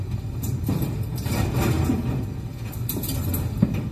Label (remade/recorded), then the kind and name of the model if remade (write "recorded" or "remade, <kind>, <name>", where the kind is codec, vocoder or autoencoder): recorded